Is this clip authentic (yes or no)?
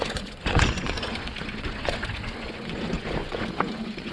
no